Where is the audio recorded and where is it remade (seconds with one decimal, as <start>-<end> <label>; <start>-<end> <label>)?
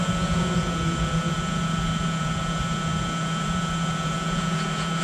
0.0-5.0 remade